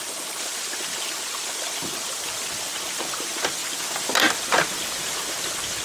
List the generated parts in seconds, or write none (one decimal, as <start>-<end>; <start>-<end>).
none